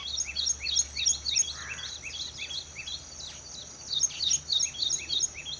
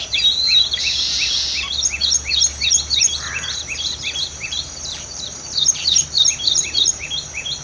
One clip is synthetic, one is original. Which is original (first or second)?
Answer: first